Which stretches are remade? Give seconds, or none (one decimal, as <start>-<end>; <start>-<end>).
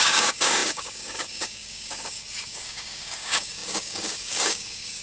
0.0-5.0